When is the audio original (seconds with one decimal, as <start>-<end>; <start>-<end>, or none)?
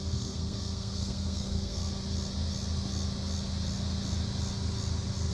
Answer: 1.8-5.3